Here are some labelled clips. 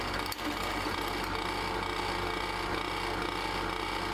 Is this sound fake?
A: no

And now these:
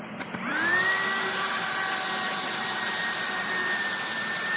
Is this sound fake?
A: yes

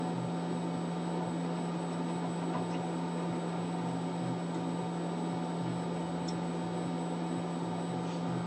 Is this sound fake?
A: no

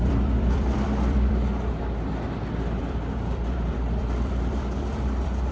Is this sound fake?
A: yes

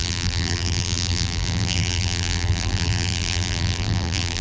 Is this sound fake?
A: yes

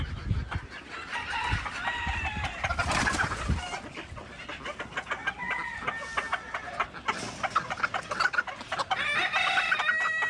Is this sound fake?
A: no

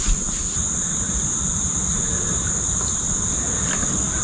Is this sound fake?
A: no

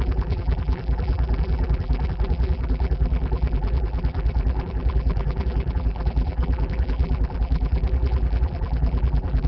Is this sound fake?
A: yes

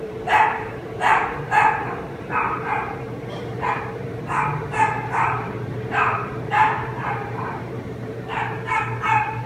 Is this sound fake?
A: yes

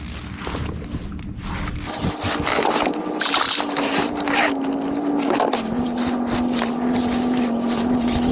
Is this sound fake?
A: no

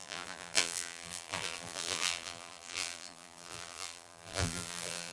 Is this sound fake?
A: yes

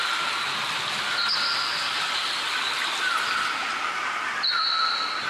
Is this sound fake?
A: yes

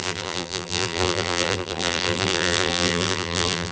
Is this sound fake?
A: yes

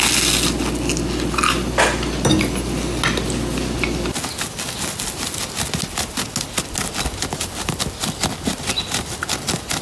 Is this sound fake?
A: no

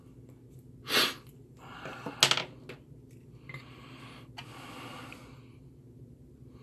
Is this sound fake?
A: no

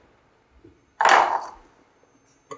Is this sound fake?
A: no